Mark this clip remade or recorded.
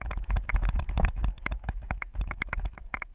remade